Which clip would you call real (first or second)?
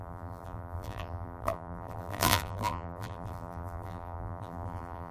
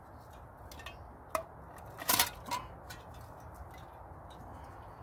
second